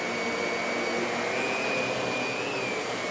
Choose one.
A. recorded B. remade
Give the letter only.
A